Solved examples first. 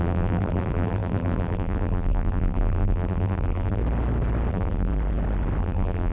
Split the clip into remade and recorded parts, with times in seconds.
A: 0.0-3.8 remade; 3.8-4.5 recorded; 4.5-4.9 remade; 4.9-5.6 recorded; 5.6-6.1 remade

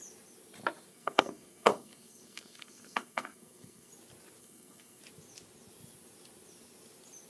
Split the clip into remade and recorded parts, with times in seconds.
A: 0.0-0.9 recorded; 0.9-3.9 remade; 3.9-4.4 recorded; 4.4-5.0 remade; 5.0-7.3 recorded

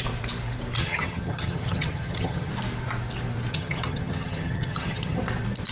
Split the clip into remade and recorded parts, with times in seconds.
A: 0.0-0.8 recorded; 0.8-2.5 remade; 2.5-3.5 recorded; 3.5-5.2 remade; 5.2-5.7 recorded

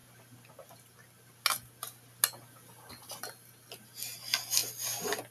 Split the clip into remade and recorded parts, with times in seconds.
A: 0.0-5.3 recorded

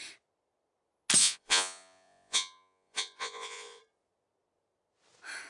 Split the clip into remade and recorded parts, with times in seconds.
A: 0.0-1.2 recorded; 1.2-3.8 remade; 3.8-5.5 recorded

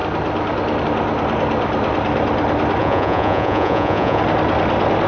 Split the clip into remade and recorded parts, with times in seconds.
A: 0.0-2.8 recorded; 2.8-4.2 remade; 4.2-5.1 recorded